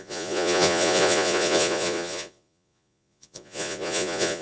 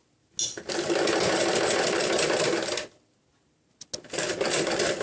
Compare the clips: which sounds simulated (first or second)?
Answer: first